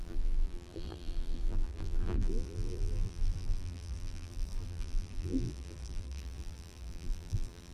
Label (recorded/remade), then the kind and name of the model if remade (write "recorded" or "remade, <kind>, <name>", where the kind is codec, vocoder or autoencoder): remade, vocoder, BigVGAN v2